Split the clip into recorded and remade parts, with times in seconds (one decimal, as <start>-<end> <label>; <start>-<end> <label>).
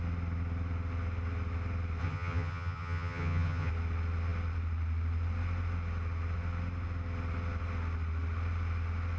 0.0-2.0 recorded; 2.0-3.7 remade; 3.7-9.2 recorded